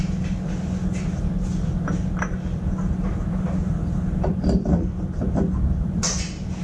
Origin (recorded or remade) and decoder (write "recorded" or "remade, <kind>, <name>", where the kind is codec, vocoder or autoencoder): recorded